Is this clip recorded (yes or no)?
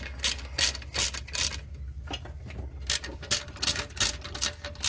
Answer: yes